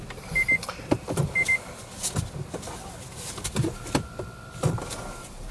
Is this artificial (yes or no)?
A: no